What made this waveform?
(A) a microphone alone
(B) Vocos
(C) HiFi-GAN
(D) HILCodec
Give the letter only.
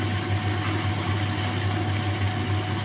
A